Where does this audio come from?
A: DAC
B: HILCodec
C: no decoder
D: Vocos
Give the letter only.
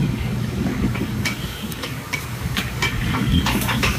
A